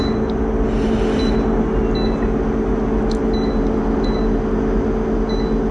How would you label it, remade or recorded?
recorded